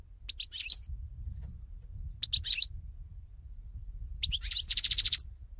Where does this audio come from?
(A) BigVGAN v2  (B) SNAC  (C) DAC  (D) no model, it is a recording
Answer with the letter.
D